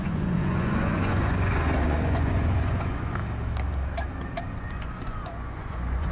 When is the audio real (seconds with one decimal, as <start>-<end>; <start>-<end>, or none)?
3.2-4.4